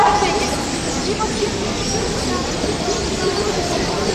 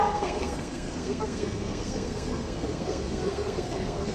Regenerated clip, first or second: second